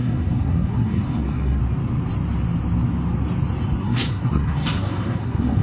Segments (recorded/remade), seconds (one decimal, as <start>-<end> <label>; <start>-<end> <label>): 0.0-1.6 remade; 1.6-3.8 recorded; 3.8-5.6 remade